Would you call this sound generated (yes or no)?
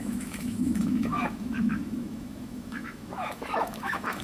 yes